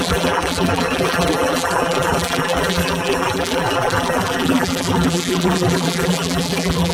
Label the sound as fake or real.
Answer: fake